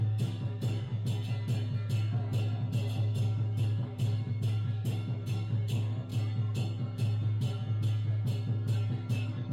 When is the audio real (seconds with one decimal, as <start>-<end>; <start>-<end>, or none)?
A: 0.9-2.7; 6.1-9.1